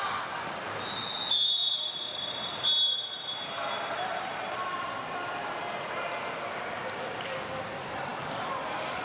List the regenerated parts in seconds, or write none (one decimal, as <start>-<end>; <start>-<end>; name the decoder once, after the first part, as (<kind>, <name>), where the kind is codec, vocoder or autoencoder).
none

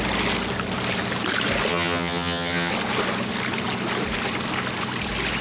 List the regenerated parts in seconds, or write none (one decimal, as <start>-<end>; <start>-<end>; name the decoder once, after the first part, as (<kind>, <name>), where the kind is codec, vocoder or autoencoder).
1.7-2.7 (vocoder, HiFi-GAN)

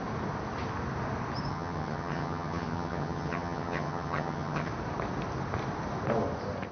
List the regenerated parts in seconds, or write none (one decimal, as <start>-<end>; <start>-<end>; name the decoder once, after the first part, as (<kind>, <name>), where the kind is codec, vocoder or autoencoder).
1.5-4.7 (vocoder, HiFi-GAN)

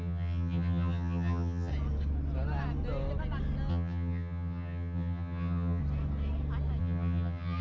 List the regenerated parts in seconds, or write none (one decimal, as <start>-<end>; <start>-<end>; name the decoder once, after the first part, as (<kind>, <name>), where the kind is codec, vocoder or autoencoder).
0.0-1.7 (vocoder, HiFi-GAN); 3.7-5.8; 6.8-7.6

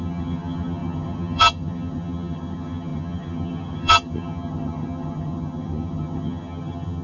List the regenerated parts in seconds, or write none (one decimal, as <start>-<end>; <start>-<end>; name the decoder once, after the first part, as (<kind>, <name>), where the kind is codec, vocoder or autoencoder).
0.0-7.0 (vocoder, HiFi-GAN)